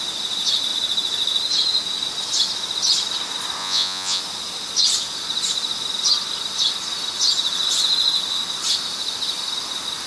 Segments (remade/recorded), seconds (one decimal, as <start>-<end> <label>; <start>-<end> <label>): 0.0-3.6 recorded; 3.6-4.2 remade; 4.2-10.1 recorded